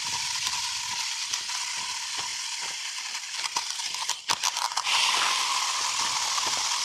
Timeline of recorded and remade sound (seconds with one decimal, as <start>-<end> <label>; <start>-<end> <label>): 0.0-6.8 recorded